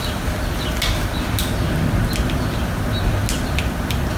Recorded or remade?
recorded